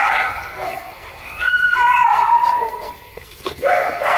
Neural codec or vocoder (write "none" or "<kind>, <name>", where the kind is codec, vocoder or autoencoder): codec, SNAC